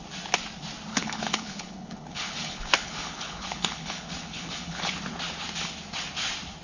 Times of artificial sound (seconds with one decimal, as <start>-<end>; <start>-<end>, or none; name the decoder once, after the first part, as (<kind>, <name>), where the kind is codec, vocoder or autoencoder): 0.9-4.9 (codec, HILCodec)